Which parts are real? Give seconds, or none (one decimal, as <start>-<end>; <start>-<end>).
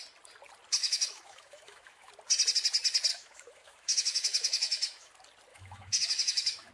0.0-0.8; 2.1-3.1; 5.1-5.5